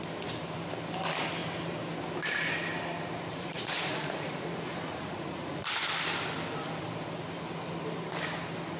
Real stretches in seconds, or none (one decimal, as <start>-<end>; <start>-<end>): 0.0-3.3; 5.7-8.8